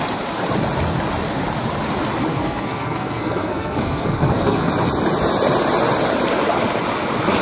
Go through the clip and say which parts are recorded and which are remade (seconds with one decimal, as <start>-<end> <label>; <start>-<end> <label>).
0.0-2.3 recorded; 2.3-4.7 remade; 4.7-7.4 recorded